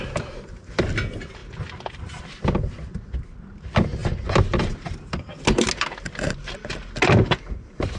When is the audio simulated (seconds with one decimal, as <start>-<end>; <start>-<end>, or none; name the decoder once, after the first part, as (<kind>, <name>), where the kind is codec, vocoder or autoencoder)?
none